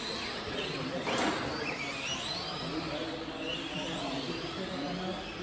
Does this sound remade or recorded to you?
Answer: recorded